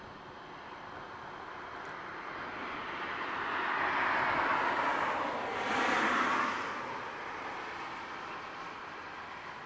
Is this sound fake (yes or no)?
no